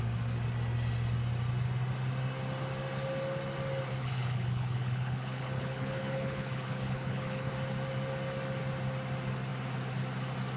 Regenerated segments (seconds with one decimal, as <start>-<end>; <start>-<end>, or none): 3.9-7.5